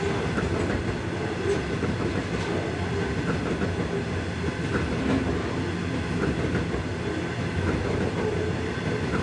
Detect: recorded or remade recorded